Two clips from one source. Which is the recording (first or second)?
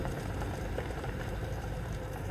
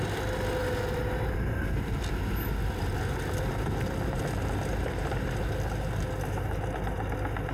second